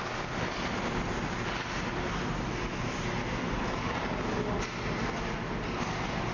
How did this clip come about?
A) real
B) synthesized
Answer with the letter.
A